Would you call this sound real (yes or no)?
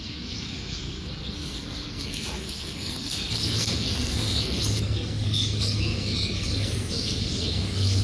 no